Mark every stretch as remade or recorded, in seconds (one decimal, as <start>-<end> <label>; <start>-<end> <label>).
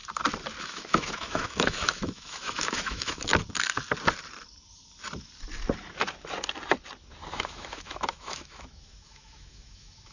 0.0-0.6 recorded; 0.6-3.3 remade; 3.3-7.3 recorded; 7.3-10.1 remade